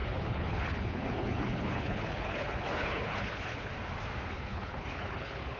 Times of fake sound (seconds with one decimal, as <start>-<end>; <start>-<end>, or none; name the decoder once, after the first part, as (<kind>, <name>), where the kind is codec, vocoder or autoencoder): 0.0-3.7 (codec, HILCodec); 4.3-5.6